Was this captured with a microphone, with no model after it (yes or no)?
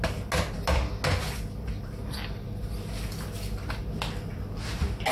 yes